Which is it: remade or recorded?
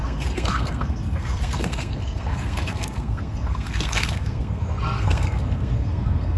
remade